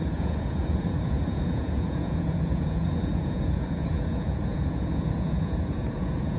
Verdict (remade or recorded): remade